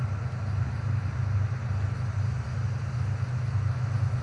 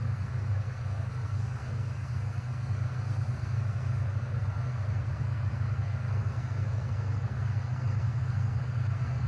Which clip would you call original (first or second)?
first